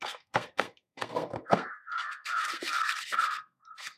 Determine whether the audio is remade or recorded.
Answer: remade